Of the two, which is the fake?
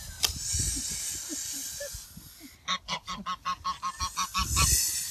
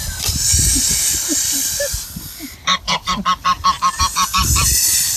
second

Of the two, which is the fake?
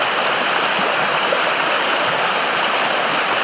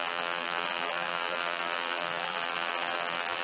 second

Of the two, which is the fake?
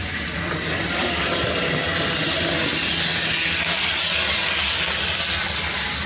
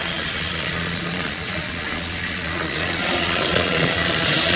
second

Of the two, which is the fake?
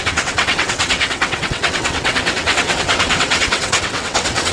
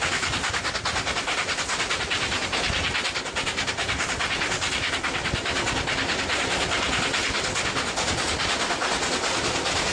first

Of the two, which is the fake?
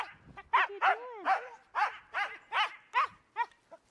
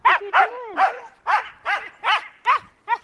second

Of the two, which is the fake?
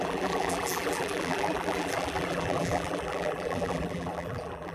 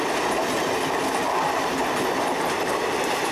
first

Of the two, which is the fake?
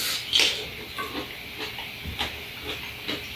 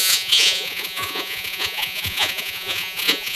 second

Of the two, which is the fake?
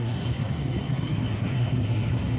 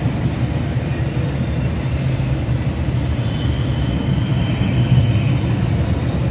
first